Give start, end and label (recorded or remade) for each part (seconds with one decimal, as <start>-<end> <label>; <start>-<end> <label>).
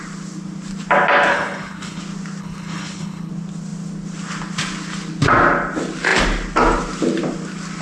0.0-1.3 recorded; 1.3-2.0 remade; 2.0-2.4 recorded; 2.4-3.3 remade; 3.3-7.8 recorded